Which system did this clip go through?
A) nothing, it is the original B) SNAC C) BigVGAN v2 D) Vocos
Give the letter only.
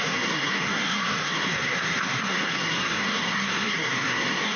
B